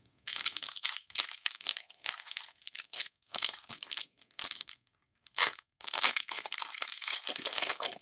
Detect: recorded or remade remade